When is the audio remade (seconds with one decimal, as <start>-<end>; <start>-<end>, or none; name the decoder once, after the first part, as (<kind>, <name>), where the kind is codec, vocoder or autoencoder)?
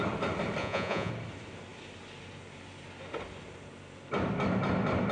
0.6-1.1 (vocoder, Vocos)